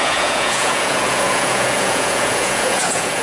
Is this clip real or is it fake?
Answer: fake